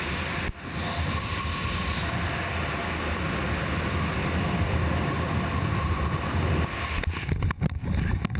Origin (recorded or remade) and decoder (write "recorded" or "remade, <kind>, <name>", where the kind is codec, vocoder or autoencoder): recorded